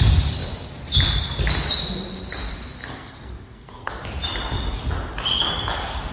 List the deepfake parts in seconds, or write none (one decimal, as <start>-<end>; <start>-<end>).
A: 2.8-3.9